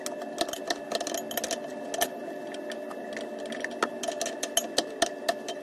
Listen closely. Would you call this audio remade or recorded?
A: recorded